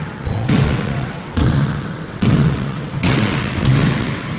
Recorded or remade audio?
remade